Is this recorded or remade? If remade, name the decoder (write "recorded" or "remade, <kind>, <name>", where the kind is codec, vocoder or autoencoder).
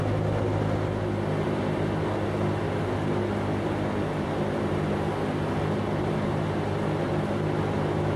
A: recorded